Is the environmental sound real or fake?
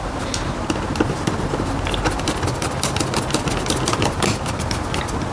real